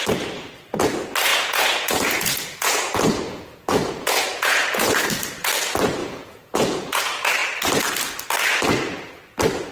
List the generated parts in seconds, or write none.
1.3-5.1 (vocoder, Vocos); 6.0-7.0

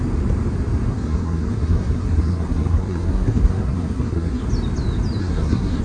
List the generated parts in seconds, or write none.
0.9-4.4 (codec, SNAC); 5.2-5.8

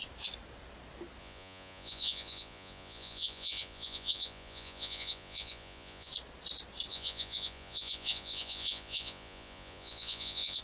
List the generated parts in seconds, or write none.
1.2-6.1 (vocoder, Vocos); 6.9-10.6

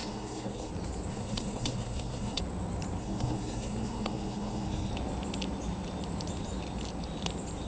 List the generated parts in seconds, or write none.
0.0-0.7 (codec, SNAC); 1.1-2.4; 3.0-4.9

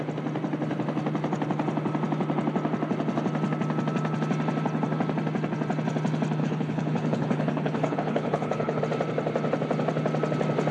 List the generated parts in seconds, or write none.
6.4-8.8 (codec, HILCodec)

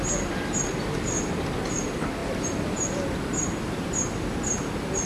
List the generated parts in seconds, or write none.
none

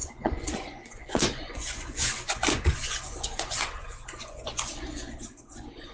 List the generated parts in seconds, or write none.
0.0-4.5 (vocoder, Vocos); 5.3-5.9